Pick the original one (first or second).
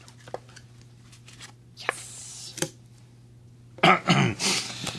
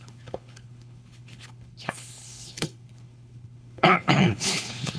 first